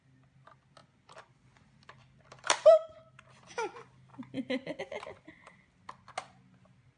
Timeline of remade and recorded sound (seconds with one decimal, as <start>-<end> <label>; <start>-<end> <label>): 0.0-0.8 recorded; 0.8-3.0 remade; 3.0-4.1 recorded; 4.1-4.8 remade; 4.8-7.0 recorded